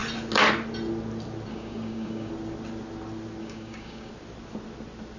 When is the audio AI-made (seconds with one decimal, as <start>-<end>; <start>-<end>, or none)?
1.5-2.3; 3.4-4.1